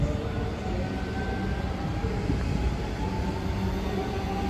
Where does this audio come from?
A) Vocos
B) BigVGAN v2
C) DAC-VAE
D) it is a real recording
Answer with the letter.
D